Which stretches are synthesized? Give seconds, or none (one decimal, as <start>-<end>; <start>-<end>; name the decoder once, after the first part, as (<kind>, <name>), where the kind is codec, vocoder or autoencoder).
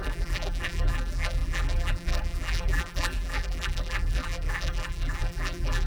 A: 0.0-5.9 (vocoder, BigVGAN v2)